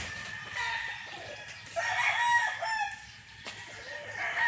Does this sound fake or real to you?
real